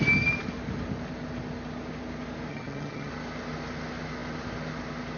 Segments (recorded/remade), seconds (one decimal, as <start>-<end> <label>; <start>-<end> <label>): 0.0-2.5 recorded; 2.5-3.1 remade; 3.1-5.2 recorded